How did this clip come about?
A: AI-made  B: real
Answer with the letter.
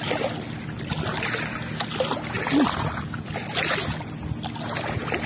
B